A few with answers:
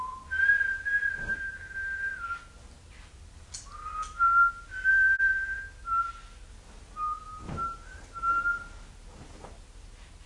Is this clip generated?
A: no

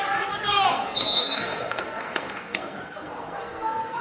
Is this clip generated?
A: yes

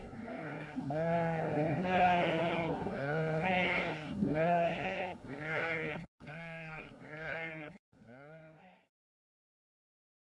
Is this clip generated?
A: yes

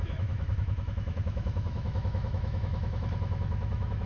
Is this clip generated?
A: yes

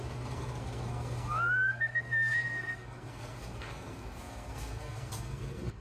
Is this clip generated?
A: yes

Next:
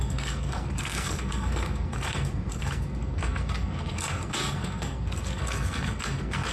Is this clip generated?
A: yes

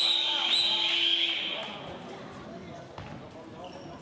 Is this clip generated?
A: no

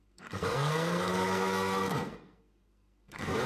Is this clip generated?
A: yes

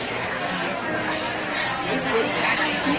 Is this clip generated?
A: no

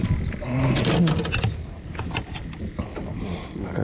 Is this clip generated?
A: no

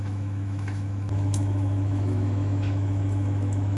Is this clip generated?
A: yes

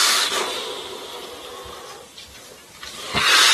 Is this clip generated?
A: yes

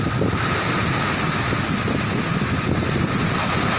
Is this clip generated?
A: no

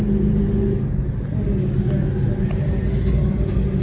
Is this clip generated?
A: no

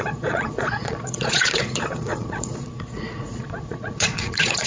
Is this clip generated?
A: yes